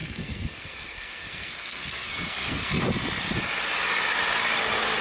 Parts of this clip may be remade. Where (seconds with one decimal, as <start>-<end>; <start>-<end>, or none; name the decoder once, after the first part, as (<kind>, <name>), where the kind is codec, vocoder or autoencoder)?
0.0-2.8 (codec, SNAC)